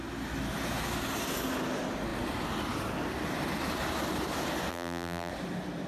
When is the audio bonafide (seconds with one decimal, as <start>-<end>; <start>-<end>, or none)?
0.0-4.7; 5.3-5.9